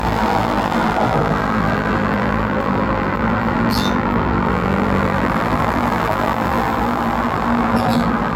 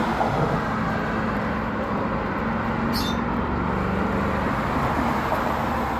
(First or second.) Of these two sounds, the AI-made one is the first